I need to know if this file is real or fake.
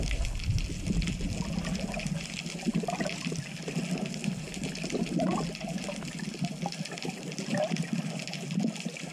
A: real